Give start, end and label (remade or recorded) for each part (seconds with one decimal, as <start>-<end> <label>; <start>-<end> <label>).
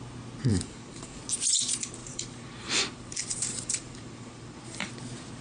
0.0-0.5 recorded; 0.5-1.2 remade; 1.2-2.0 recorded; 2.0-4.9 remade; 4.9-5.4 recorded